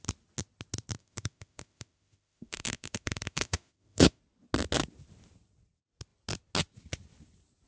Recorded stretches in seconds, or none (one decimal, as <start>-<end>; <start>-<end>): 0.0-1.0; 4.2-7.7

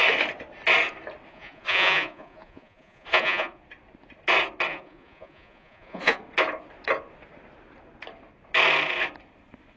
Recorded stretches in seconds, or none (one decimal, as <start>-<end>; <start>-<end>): 0.0-1.3; 3.6-4.7; 6.2-9.8

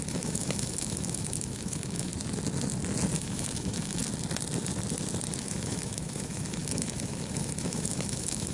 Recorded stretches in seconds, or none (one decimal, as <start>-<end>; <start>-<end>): 2.1-3.2; 4.0-5.4

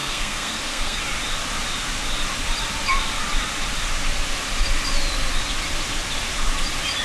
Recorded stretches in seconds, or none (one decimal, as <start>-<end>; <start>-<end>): 1.0-7.0

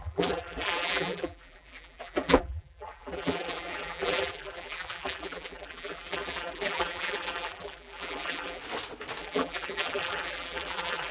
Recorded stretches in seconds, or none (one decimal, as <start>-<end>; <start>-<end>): 8.6-9.2